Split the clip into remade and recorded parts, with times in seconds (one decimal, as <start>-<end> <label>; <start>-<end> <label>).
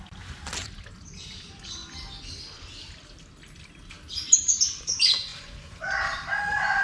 0.0-5.3 recorded; 5.3-5.9 remade; 5.9-6.8 recorded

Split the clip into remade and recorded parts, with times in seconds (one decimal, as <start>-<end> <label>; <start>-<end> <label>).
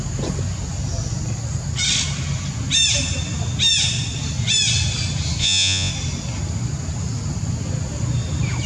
0.0-5.4 recorded; 5.4-5.9 remade; 5.9-8.7 recorded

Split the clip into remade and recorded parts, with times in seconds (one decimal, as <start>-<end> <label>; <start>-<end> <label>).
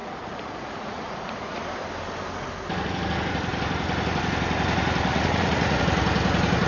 0.0-1.6 remade; 1.6-5.1 recorded; 5.1-5.8 remade; 5.8-6.7 recorded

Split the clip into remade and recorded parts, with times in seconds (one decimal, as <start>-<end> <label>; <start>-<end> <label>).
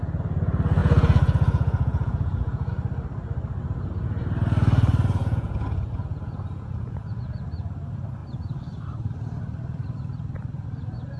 0.0-0.8 recorded; 0.8-2.7 remade; 2.7-5.2 recorded; 5.2-7.4 remade; 7.4-11.2 recorded